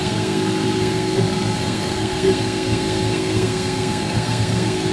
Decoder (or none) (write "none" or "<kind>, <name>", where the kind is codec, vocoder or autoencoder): codec, SNAC